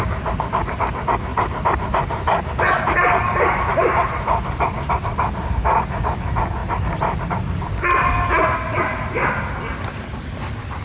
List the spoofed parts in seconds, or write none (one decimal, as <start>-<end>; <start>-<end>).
1.3-4.9; 6.6-7.2